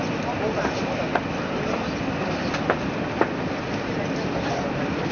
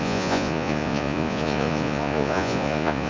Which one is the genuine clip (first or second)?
first